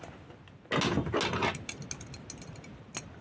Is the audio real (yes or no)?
yes